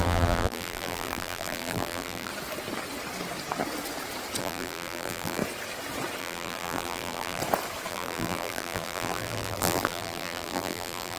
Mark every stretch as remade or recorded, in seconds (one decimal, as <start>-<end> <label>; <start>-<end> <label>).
0.0-2.3 remade; 2.3-4.4 recorded; 4.4-5.4 remade; 5.4-6.2 recorded; 6.2-7.4 remade; 7.4-7.9 recorded; 7.9-11.2 remade